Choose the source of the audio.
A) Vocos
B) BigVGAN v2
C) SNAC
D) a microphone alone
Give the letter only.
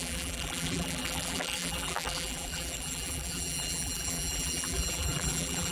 B